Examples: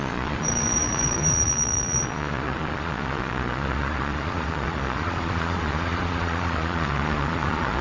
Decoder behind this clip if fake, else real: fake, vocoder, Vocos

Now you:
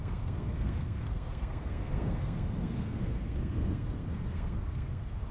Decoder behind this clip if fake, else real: fake, codec, SNAC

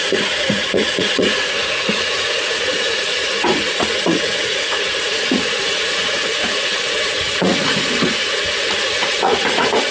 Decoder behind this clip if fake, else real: fake, vocoder, Vocos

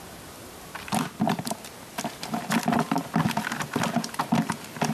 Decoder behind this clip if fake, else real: real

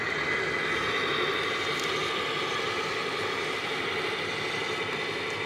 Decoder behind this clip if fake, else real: real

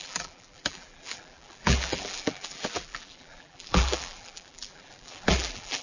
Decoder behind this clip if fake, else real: fake, vocoder, BigVGAN v2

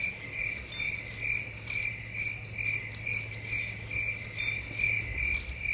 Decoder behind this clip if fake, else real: real